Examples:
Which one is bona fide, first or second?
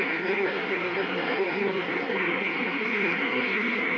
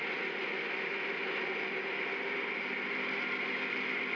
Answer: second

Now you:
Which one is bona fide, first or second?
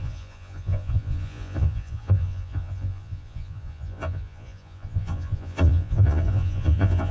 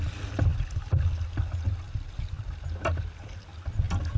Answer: second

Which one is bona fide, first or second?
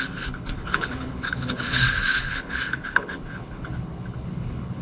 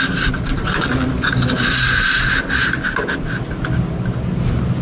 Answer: second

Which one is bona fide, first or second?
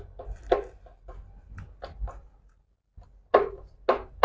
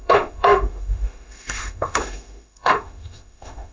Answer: first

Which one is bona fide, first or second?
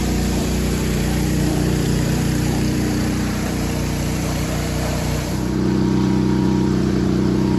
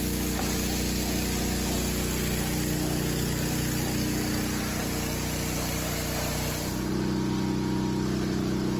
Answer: second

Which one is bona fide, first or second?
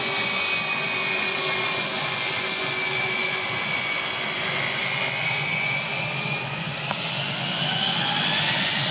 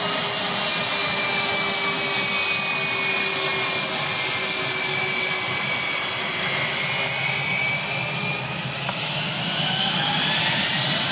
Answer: second